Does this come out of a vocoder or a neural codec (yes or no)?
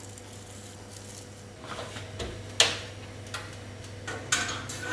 no